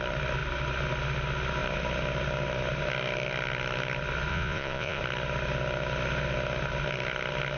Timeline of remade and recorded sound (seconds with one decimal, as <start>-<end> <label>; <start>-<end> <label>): 0.0-4.3 recorded; 4.3-5.0 remade; 5.0-7.6 recorded